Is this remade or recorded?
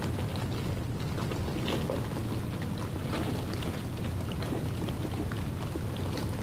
recorded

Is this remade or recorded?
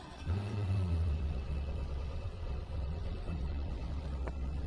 remade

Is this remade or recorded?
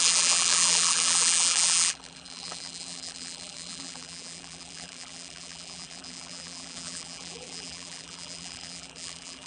remade